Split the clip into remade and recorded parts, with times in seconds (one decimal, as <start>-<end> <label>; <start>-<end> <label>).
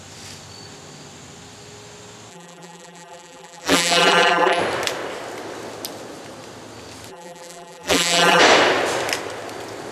0.0-2.3 recorded; 2.3-4.6 remade; 4.6-7.1 recorded; 7.1-8.4 remade; 8.4-9.9 recorded